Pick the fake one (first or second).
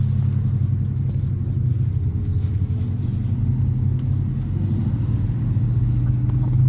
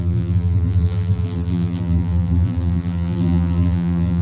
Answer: second